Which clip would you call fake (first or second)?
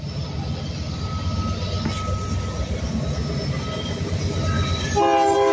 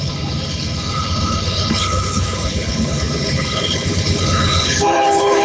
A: second